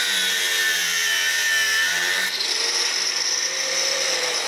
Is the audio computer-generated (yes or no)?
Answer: yes